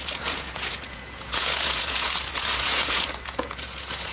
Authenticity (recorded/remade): remade